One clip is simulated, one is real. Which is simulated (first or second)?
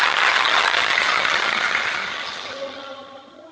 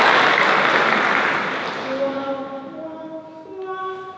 first